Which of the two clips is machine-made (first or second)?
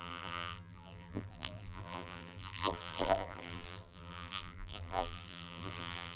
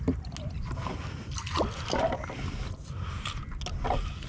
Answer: first